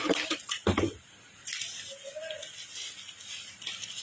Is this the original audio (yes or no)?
yes